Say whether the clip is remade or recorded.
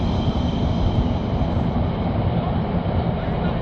recorded